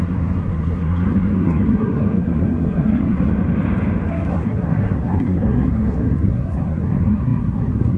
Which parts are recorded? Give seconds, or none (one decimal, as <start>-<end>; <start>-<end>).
3.3-4.1